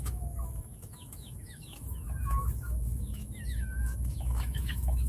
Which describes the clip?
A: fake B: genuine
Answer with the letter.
A